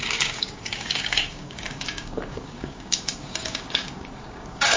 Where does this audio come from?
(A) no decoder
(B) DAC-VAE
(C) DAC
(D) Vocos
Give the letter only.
C